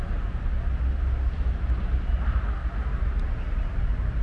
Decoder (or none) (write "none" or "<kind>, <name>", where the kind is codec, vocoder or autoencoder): none